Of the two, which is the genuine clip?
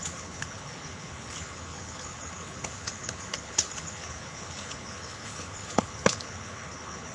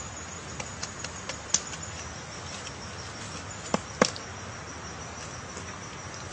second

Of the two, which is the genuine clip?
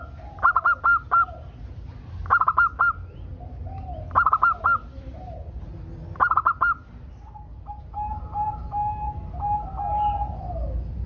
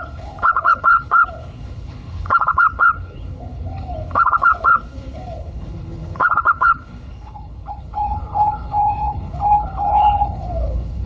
first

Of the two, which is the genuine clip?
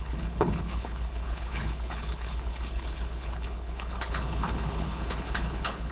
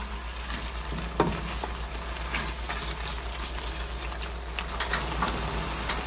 second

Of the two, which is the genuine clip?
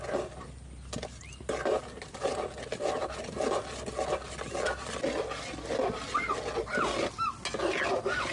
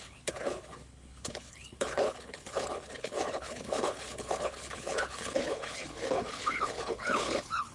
first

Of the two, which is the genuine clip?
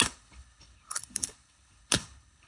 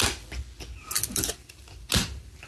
second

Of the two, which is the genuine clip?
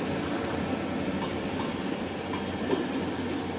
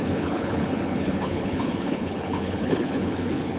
first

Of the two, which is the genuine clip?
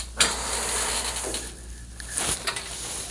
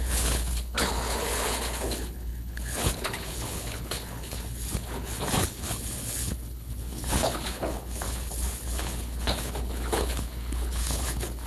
first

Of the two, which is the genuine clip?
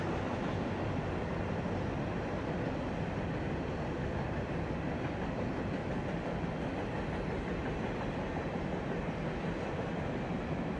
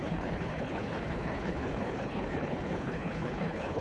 first